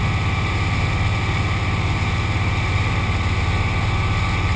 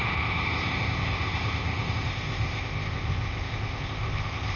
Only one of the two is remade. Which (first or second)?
second